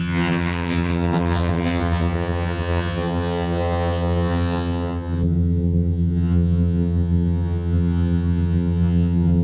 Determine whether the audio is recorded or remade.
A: remade